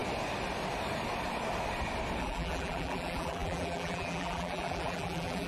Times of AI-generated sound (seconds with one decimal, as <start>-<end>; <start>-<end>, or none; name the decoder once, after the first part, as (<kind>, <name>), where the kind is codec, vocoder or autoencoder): 2.2-5.5 (vocoder, BigVGAN v2)